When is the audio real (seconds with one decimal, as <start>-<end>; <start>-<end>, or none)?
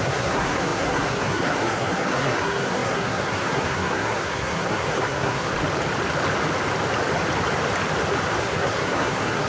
5.5-8.4